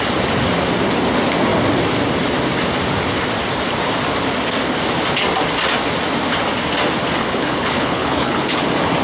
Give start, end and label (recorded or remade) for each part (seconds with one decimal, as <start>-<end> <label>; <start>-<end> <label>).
0.0-7.2 recorded; 7.2-8.6 remade; 8.6-9.0 recorded